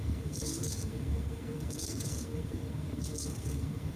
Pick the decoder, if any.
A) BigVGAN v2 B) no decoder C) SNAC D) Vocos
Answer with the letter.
C